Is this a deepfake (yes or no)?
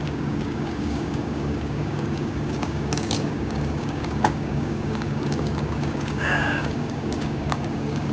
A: yes